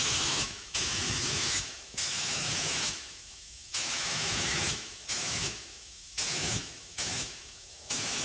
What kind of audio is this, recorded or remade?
remade